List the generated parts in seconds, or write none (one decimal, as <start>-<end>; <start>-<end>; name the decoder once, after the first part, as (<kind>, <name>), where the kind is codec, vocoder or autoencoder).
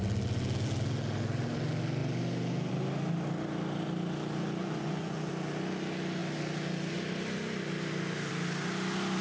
4.6-5.3 (vocoder, Vocos)